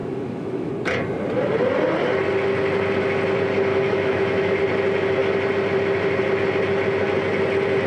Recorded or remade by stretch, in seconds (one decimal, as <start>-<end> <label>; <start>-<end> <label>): 0.0-0.7 remade; 0.7-3.7 recorded; 3.7-4.6 remade; 4.6-7.9 recorded